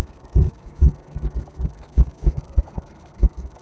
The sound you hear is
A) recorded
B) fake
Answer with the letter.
B